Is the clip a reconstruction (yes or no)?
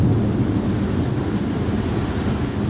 no